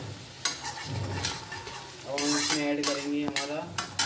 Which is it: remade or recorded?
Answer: recorded